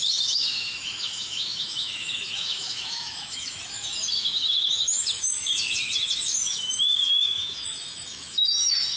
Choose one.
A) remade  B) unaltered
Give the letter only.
A